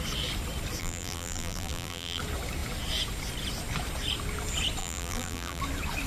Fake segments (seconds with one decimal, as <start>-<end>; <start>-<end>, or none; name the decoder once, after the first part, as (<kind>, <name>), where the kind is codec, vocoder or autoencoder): 0.8-2.2 (vocoder, BigVGAN v2); 4.8-5.6